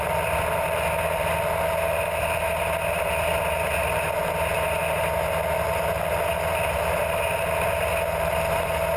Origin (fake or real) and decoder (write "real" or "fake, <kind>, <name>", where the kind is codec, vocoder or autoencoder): real